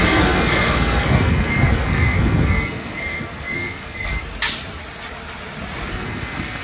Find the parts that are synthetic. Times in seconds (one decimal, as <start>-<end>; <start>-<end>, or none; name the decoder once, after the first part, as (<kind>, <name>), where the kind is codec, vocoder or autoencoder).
0.0-4.1 (codec, SNAC); 5.9-6.6